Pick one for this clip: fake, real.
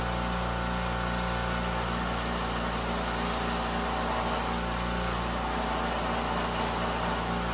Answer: real